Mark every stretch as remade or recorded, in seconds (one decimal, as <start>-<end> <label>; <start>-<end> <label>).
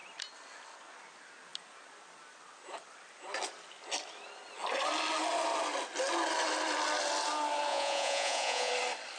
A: 0.0-7.7 recorded; 7.7-8.7 remade; 8.7-9.2 recorded